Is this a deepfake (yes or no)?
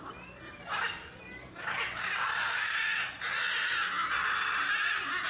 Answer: no